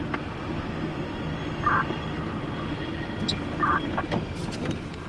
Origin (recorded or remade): recorded